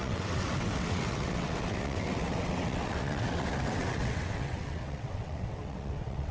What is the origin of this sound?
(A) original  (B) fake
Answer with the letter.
B